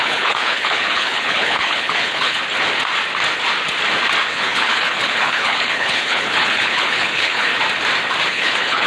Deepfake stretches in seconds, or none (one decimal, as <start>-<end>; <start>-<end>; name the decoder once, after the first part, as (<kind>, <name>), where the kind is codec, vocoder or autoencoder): 0.0-2.4 (codec, HILCodec); 4.3-7.5; 8.3-8.9